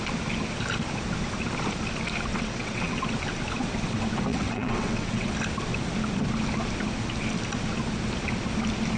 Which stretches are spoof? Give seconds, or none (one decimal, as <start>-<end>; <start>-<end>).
2.3-3.0; 4.3-5.3